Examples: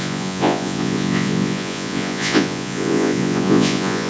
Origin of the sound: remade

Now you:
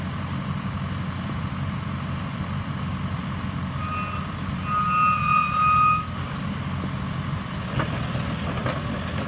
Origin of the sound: recorded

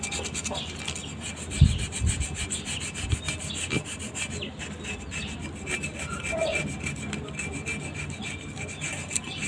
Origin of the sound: recorded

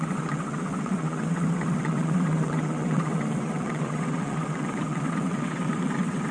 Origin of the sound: remade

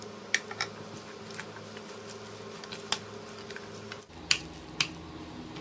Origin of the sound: recorded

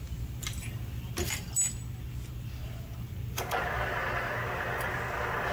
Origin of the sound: recorded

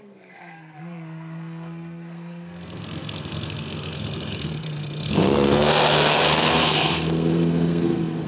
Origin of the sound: remade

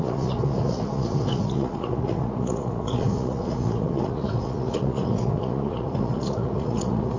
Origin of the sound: remade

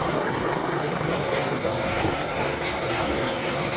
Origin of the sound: remade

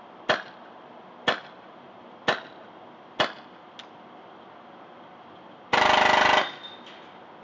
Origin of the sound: recorded